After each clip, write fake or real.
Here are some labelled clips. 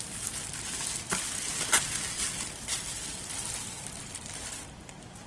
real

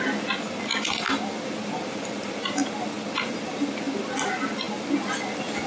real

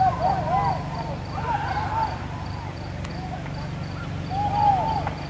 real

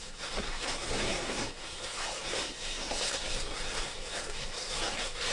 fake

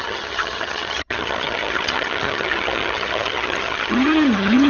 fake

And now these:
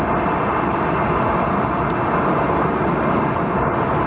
real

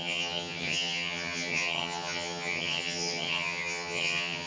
fake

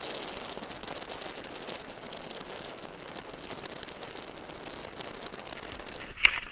real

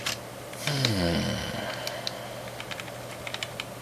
real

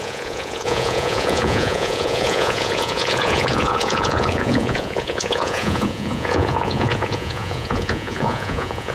fake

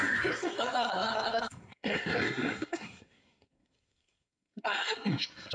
fake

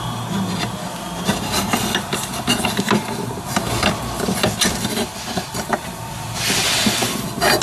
real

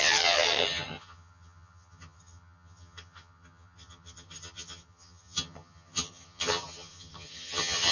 fake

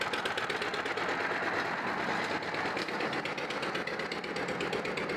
real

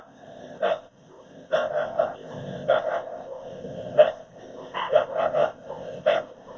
fake